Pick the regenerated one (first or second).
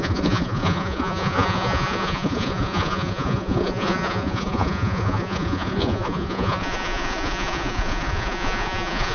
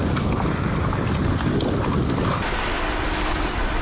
first